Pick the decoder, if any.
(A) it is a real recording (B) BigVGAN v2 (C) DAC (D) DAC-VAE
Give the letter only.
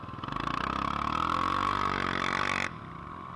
A